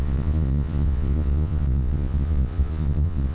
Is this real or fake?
fake